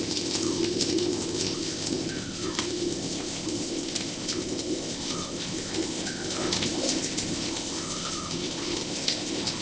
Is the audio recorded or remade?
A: remade